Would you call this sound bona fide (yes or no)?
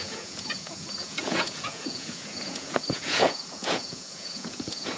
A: no